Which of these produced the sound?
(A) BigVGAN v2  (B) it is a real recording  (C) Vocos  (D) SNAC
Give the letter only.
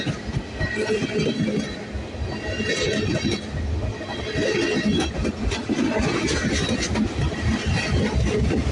B